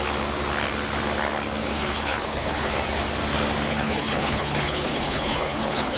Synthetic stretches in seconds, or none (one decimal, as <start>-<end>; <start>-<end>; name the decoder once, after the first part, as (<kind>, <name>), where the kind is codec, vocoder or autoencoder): 1.6-2.7 (codec, HILCodec); 3.7-6.0

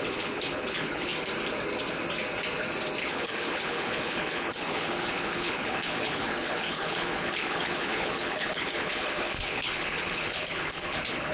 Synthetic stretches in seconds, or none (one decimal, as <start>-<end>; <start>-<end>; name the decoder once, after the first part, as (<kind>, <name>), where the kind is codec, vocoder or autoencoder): 0.0-1.1 (codec, HILCodec); 3.0-11.3

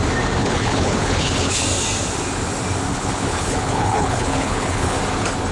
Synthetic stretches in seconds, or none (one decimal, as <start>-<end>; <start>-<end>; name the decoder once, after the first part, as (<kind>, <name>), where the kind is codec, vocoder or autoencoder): 0.4-1.6 (codec, HILCodec); 2.9-5.0

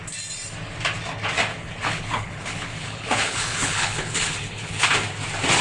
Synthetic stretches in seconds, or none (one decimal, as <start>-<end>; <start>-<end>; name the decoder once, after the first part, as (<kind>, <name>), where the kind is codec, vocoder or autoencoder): 1.5-4.9 (codec, HILCodec)

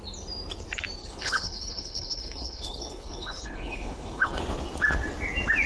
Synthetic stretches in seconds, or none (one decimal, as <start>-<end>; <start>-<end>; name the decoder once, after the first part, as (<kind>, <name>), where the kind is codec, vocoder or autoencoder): 1.0-4.4 (codec, HILCodec)

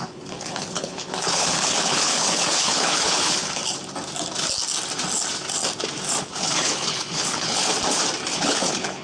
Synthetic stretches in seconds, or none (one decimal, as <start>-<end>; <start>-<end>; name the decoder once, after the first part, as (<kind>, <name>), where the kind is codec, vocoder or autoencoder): 0.0-3.6 (codec, HILCodec); 6.2-7.7; 8.3-9.0